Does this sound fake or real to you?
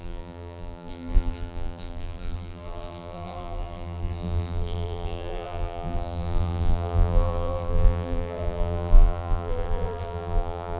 fake